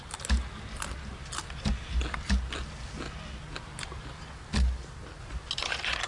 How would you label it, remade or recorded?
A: recorded